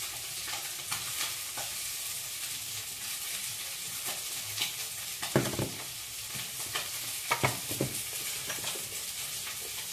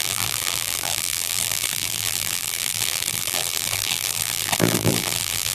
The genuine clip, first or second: first